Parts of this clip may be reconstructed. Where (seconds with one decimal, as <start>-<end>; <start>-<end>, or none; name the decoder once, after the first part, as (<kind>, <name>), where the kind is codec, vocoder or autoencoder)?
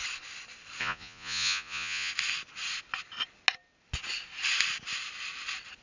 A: 0.8-2.1 (vocoder, Vocos)